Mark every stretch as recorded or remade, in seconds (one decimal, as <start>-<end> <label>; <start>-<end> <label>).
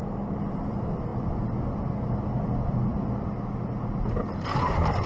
0.0-5.1 recorded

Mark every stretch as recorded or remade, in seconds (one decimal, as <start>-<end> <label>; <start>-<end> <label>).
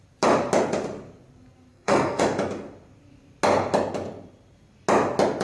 0.0-1.7 recorded; 1.7-2.2 remade; 2.2-5.4 recorded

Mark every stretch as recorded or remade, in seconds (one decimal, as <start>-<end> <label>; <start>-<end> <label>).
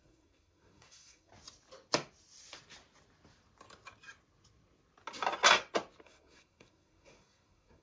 0.0-1.3 remade; 1.3-6.0 recorded; 6.0-7.8 remade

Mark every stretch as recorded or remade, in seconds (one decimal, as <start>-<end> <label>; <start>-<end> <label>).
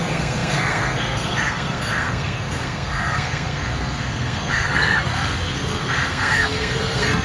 0.0-7.2 remade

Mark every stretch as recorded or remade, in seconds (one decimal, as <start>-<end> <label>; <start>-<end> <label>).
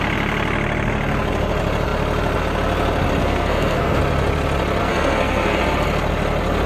0.0-3.2 recorded; 3.2-4.0 remade; 4.0-4.8 recorded; 4.8-5.6 remade; 5.6-6.7 recorded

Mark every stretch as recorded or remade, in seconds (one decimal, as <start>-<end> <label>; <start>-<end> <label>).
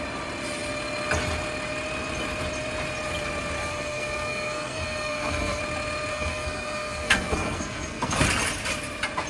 0.0-3.6 recorded; 3.6-5.6 remade; 5.6-6.1 recorded; 6.1-8.2 remade; 8.2-9.3 recorded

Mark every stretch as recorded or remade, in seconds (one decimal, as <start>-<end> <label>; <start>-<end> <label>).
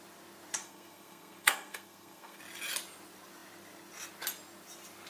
0.0-0.6 recorded; 0.6-2.4 remade; 2.4-5.1 recorded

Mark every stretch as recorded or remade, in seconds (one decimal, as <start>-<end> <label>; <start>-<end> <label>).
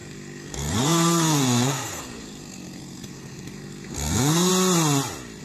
0.0-4.5 remade; 4.5-5.4 recorded